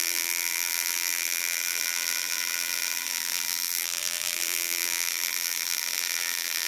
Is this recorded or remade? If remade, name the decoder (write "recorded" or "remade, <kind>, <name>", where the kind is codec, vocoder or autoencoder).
remade, vocoder, BigVGAN v2